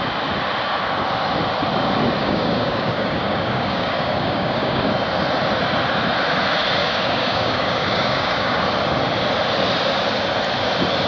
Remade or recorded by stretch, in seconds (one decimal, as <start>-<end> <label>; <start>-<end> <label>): 0.0-2.2 recorded; 2.2-4.9 remade; 4.9-6.8 recorded; 6.8-8.6 remade; 8.6-11.1 recorded